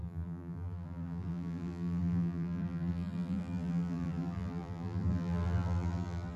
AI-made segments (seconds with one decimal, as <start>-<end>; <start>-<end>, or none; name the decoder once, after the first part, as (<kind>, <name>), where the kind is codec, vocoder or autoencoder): 0.0-6.4 (vocoder, BigVGAN v2)